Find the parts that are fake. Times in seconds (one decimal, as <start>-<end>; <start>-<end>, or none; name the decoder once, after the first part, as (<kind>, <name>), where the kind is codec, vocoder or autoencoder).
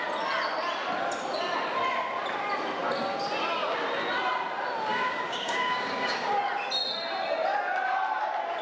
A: 4.9-6.3 (codec, DAC)